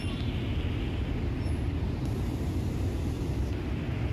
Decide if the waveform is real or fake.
real